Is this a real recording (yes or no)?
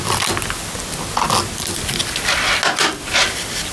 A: yes